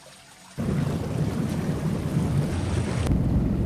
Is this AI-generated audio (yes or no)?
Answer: no